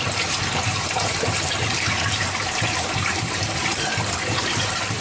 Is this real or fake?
fake